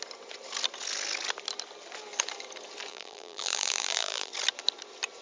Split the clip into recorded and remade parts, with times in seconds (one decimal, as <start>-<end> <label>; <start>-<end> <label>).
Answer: 0.0-2.9 recorded; 2.9-4.3 remade; 4.3-5.2 recorded